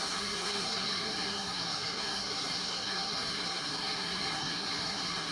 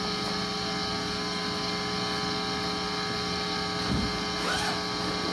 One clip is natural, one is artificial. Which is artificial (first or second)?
first